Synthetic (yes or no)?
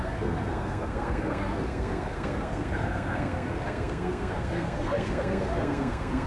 yes